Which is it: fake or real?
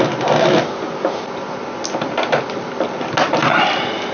real